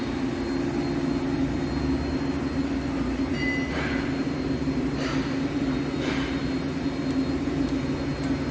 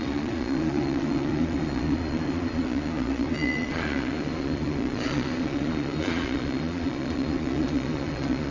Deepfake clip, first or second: second